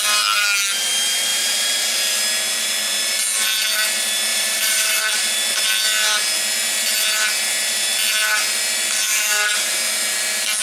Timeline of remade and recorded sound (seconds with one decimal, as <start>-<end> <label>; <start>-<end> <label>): 0.0-1.3 recorded; 1.3-2.2 remade; 2.2-4.3 recorded; 4.3-5.3 remade; 5.3-9.1 recorded; 9.1-9.9 remade; 9.9-10.6 recorded